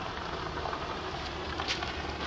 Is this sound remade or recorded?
remade